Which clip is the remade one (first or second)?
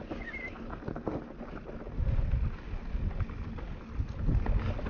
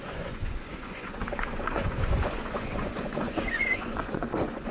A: second